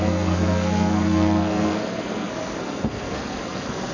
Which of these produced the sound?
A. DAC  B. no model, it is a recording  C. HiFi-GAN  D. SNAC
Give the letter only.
D